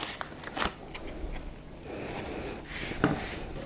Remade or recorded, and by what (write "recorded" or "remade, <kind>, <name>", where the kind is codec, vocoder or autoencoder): recorded